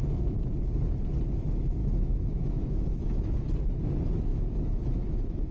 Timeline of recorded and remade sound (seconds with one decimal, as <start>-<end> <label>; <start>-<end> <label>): 0.0-1.8 recorded; 1.8-3.5 remade; 3.5-4.3 recorded; 4.3-5.5 remade